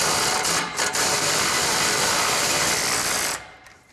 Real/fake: fake